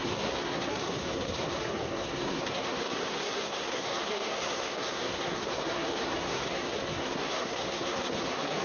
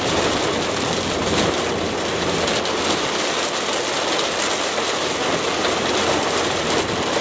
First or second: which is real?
second